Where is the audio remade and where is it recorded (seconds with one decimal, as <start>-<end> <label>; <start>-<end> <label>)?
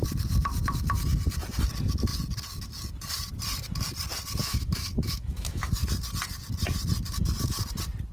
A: 0.0-4.4 recorded; 4.4-5.7 remade; 5.7-8.1 recorded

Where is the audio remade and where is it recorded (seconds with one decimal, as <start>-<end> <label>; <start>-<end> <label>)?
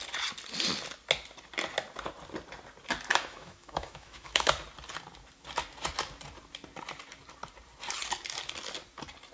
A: 0.0-3.1 recorded; 3.1-4.5 remade; 4.5-9.3 recorded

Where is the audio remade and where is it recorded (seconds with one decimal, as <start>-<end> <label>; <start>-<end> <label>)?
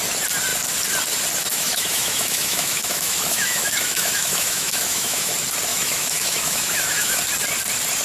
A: 0.0-1.5 recorded; 1.5-5.3 remade; 5.3-5.7 recorded; 5.7-7.2 remade; 7.2-8.0 recorded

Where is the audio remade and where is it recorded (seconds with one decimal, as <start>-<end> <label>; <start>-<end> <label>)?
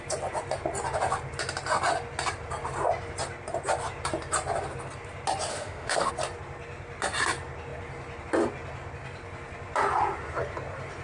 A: 0.0-5.5 recorded; 5.5-6.1 remade; 6.1-11.0 recorded